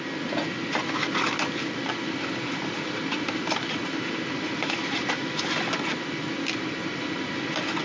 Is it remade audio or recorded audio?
recorded